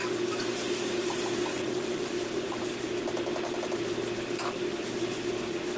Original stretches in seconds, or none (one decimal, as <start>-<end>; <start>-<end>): 0.0-1.5; 2.1-5.8